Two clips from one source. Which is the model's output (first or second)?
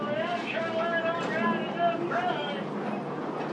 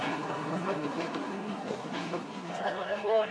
second